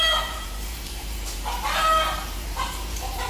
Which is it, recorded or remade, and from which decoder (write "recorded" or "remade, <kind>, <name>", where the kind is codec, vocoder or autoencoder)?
remade, vocoder, BigVGAN v2